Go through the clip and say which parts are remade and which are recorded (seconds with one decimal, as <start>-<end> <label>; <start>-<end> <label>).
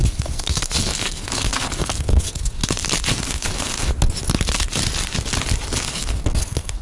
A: 0.0-2.6 remade; 2.6-3.2 recorded; 3.2-3.9 remade; 3.9-5.8 recorded; 5.8-6.8 remade